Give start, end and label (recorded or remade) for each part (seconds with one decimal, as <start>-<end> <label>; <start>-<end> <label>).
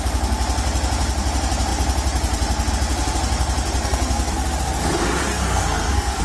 0.0-3.8 recorded; 3.8-4.3 remade; 4.3-5.3 recorded; 5.3-6.2 remade